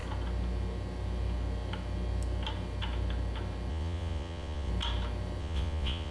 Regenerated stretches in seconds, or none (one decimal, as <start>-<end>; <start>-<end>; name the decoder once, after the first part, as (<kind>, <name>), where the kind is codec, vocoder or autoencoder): 3.7-4.7 (vocoder, Vocos); 5.4-6.1